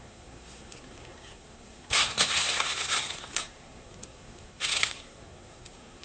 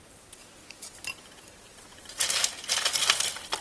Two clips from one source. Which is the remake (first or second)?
first